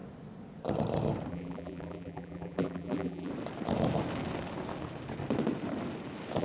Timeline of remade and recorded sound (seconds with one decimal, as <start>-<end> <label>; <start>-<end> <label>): 0.0-1.3 recorded; 1.3-3.3 remade; 3.3-6.4 recorded